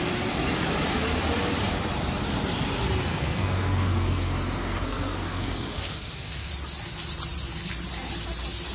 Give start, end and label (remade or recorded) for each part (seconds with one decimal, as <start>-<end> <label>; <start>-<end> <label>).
0.0-3.1 recorded; 3.1-6.5 remade; 6.5-8.7 recorded

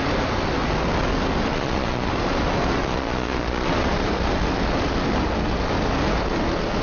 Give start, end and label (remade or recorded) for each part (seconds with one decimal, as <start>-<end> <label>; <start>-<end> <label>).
0.0-1.5 recorded; 1.5-2.1 remade; 2.1-2.8 recorded; 2.8-3.7 remade; 3.7-6.8 recorded

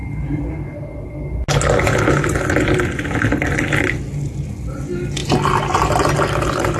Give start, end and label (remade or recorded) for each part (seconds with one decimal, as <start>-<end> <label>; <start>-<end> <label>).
0.0-6.8 recorded

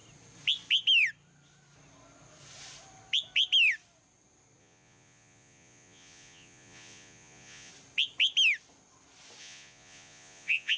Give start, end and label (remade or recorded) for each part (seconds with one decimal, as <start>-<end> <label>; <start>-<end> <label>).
0.0-4.6 recorded; 4.6-7.7 remade; 7.7-9.4 recorded; 9.4-10.8 remade

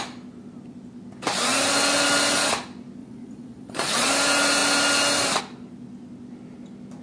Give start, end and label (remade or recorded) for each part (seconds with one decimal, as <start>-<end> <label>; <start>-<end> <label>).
0.0-3.0 recorded; 3.0-4.1 remade; 4.1-7.0 recorded

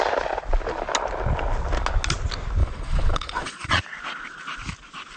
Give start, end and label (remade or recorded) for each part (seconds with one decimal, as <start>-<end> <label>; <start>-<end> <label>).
0.0-2.6 recorded; 2.6-3.8 remade; 3.8-5.2 recorded

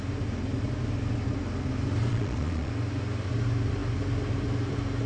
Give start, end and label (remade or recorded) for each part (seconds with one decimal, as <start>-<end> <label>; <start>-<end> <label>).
0.0-2.1 recorded; 2.1-2.7 remade; 2.7-5.1 recorded

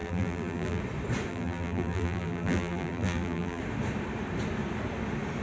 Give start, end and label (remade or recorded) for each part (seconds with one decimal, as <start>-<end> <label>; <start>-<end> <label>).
0.0-0.8 remade; 0.8-1.3 recorded; 1.3-3.6 remade; 3.6-5.4 recorded